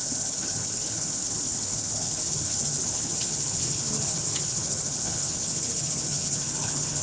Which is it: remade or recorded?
remade